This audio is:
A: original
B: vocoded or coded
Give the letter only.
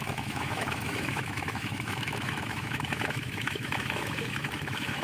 B